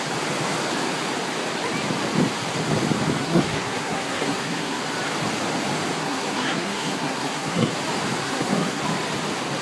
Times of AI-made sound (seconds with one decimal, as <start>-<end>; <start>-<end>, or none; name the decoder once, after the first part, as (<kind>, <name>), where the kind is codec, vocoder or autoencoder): 3.2-4.8 (codec, SNAC); 6.0-7.7; 8.2-8.8